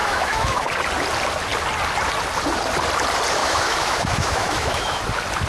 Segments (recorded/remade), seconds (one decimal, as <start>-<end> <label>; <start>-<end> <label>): 0.0-0.7 remade; 0.7-3.4 recorded; 3.4-5.0 remade; 5.0-5.5 recorded

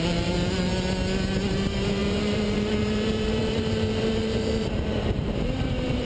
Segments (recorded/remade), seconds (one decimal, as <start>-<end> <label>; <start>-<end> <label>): 0.0-0.7 remade; 0.7-1.4 recorded; 1.4-6.0 remade

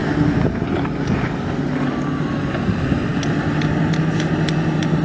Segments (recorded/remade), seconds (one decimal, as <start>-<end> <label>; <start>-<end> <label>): 0.0-5.0 recorded

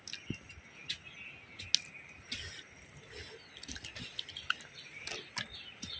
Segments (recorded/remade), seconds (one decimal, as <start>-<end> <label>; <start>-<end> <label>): 0.0-6.0 recorded